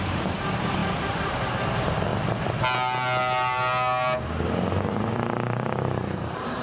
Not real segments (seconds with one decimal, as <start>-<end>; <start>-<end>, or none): 0.0-0.8; 1.7-2.1; 5.1-6.6